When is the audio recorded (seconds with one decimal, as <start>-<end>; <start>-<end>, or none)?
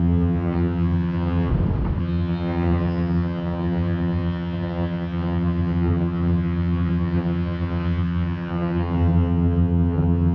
1.5-2.0